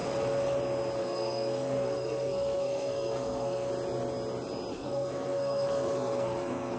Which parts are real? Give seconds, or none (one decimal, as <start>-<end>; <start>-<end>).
0.0-1.0; 3.7-4.7